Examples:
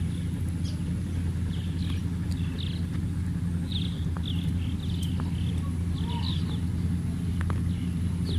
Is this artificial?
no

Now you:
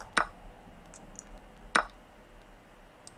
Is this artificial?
no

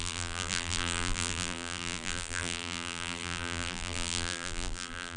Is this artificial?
yes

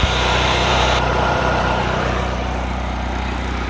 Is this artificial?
yes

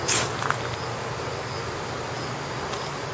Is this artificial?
no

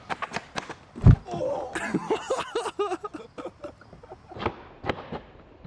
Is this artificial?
no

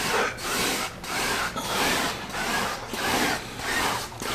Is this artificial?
yes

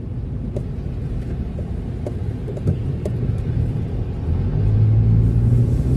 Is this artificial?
no